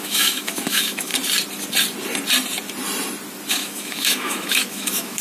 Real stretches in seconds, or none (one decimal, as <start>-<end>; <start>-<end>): 1.1-3.5